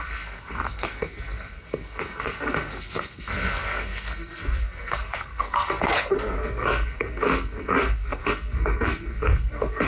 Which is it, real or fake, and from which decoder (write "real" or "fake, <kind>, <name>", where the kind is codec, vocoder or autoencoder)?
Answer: fake, codec, SNAC